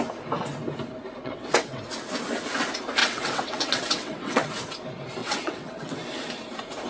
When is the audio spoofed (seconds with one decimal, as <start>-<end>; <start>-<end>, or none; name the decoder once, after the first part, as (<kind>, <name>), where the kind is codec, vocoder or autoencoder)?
1.2-1.8 (vocoder, WaveNeXt); 3.0-4.5; 5.2-6.0